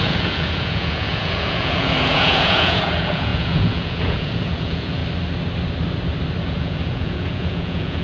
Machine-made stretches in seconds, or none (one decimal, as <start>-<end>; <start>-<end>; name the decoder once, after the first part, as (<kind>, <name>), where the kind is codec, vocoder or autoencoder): 0.0-5.0 (vocoder, Vocos); 6.4-8.0